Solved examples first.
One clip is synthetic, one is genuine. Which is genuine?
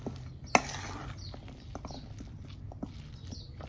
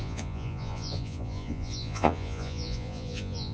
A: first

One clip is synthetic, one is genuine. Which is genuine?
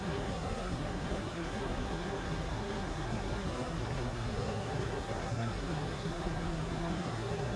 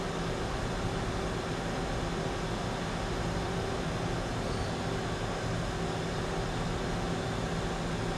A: second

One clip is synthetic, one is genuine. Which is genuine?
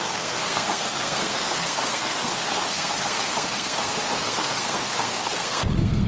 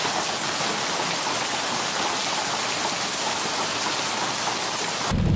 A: second